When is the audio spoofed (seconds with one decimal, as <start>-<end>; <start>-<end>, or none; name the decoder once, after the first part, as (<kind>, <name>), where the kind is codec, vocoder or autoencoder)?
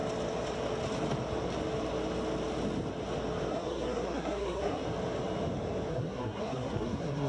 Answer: 3.5-4.8 (codec, SNAC); 5.9-7.3